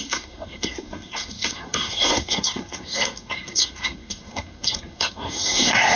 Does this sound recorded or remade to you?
remade